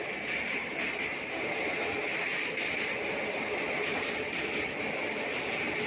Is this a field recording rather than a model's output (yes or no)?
yes